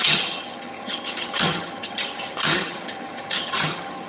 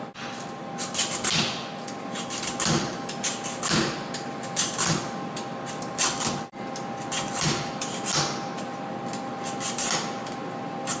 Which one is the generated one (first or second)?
first